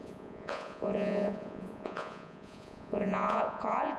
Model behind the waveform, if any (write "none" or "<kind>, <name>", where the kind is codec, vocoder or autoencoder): vocoder, Vocos